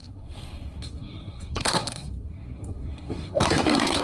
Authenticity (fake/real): fake